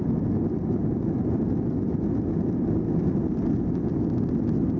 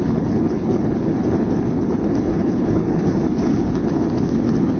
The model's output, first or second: second